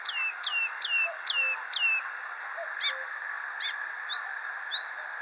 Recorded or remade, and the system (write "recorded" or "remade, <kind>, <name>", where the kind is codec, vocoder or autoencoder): recorded